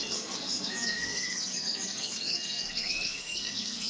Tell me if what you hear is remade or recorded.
remade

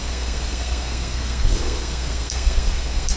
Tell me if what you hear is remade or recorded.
remade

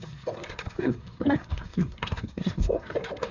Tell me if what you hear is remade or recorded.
remade